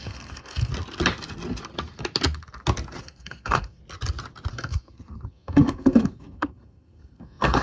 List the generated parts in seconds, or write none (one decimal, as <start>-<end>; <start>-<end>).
0.0-0.7; 3.0-3.8; 4.5-7.6